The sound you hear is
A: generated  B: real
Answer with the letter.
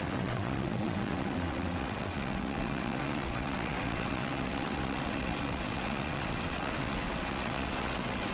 A